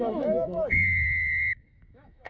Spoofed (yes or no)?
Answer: yes